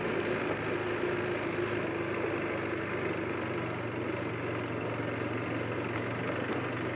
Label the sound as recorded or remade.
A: recorded